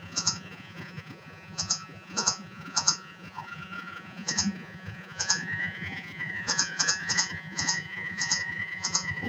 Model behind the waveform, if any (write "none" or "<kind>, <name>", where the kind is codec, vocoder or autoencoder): vocoder, Vocos